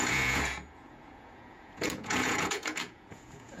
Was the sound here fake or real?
fake